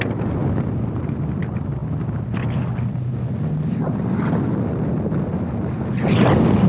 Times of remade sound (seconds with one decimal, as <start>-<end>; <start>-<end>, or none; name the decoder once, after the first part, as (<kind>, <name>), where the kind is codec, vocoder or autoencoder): 0.4-1.0 (vocoder, BigVGAN v2)